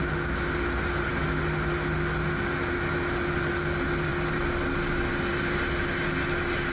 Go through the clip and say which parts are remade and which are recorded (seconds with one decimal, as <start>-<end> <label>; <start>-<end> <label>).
0.0-6.7 recorded